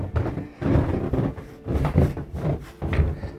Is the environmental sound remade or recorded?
recorded